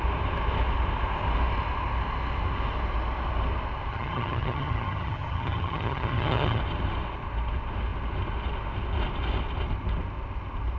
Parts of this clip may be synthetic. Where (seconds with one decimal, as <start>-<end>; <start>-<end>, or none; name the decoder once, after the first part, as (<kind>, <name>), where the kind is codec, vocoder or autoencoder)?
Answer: 3.9-6.6 (vocoder, HiFi-GAN)